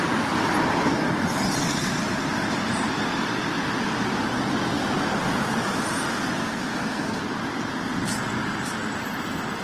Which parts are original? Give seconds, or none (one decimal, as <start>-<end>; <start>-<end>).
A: 0.0-6.4; 7.2-9.6